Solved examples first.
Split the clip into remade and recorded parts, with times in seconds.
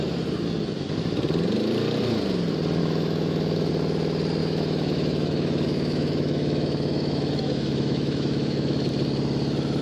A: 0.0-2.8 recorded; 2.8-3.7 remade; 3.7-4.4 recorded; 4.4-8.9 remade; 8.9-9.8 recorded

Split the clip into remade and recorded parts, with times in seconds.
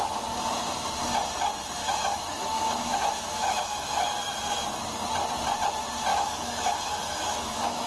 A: 0.0-1.8 recorded; 1.8-4.2 remade; 4.2-6.1 recorded; 6.1-7.9 remade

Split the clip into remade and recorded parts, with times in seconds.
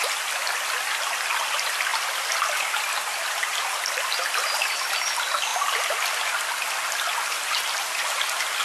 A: 0.0-8.6 recorded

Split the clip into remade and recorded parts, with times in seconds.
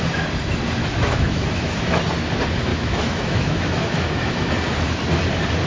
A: 0.0-0.8 recorded; 0.8-2.0 remade; 2.0-2.7 recorded; 2.7-4.5 remade; 4.5-5.7 recorded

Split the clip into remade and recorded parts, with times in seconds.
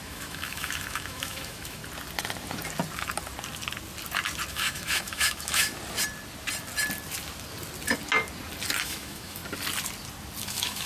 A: 0.0-1.8 remade; 1.8-4.5 recorded; 4.5-5.7 remade; 5.7-8.8 recorded; 8.8-9.4 remade; 9.4-10.4 recorded; 10.4-10.9 remade